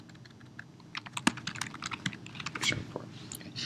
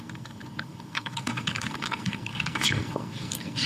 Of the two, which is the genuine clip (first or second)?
first